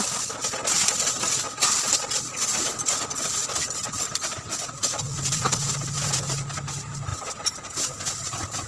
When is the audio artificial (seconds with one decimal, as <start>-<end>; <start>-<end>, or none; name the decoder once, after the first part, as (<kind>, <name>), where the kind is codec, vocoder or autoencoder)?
4.8-6.3 (vocoder, Vocos); 7.1-8.1